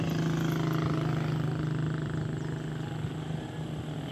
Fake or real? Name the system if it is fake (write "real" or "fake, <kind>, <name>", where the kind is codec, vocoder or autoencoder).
real